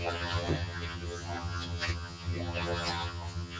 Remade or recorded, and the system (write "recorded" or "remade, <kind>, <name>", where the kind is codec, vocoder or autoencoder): remade, vocoder, HiFi-GAN